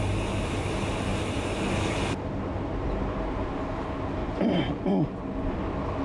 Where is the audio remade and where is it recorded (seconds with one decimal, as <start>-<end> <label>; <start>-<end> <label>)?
0.0-4.2 recorded; 4.2-5.2 remade; 5.2-6.0 recorded